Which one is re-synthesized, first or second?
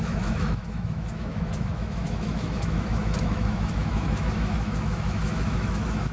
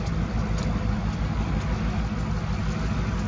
first